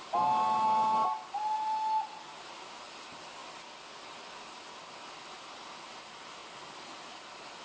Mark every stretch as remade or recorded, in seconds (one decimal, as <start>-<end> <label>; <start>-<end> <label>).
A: 0.0-7.6 recorded